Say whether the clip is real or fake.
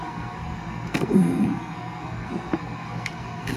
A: fake